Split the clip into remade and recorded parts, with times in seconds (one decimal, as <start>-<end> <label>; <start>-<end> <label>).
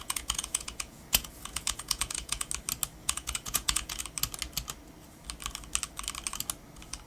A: 0.0-2.5 remade; 2.5-3.0 recorded; 3.0-4.0 remade; 4.0-7.1 recorded